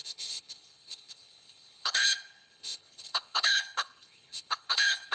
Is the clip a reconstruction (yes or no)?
yes